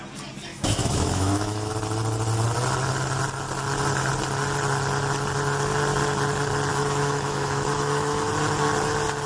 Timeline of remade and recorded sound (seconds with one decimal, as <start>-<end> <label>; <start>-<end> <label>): 0.0-0.5 recorded; 0.5-1.7 remade; 1.7-6.7 recorded; 6.7-8.3 remade; 8.3-9.3 recorded